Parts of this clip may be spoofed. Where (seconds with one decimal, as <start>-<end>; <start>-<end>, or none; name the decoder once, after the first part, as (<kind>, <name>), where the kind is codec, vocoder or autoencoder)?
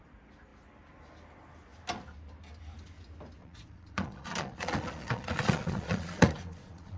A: 3.4-7.0 (vocoder, Vocos)